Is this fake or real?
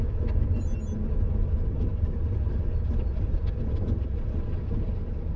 real